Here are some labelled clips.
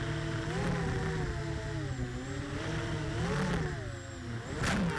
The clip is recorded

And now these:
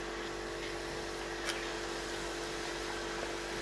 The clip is recorded